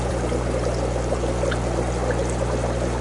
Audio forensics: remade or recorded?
recorded